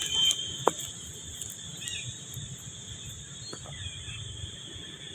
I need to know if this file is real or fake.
real